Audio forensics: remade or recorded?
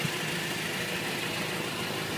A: recorded